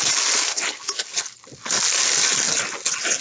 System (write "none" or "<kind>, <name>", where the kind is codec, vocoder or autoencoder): none